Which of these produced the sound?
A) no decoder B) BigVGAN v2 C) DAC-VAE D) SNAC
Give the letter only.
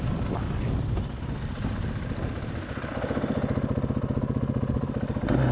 A